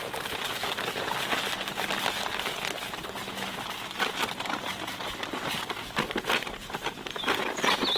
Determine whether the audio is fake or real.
real